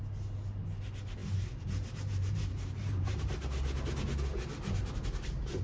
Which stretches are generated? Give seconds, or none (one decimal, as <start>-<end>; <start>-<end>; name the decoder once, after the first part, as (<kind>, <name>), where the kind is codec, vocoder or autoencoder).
1.2-3.2 (vocoder, BigVGAN v2)